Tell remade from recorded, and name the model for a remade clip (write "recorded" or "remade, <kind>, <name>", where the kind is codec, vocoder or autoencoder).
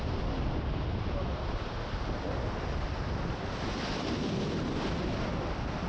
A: recorded